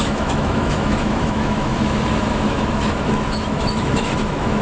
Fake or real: fake